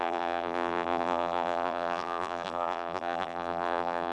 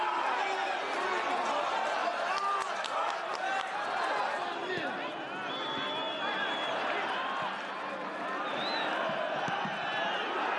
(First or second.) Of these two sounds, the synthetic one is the first